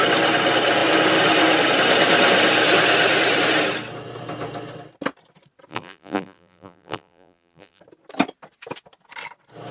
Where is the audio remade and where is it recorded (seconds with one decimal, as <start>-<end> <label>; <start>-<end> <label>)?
0.0-5.7 recorded; 5.7-7.8 remade; 7.8-9.7 recorded